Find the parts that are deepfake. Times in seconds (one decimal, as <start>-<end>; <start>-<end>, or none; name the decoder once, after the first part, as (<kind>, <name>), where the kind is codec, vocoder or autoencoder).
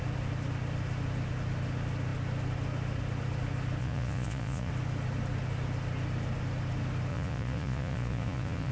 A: 3.8-4.7 (vocoder, Vocos); 7.1-8.7